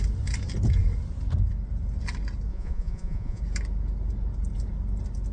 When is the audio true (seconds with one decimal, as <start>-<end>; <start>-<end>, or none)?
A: 0.0-2.5; 3.4-5.3